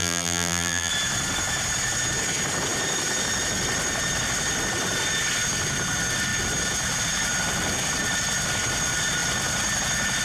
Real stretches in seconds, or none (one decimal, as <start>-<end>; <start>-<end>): 0.9-10.2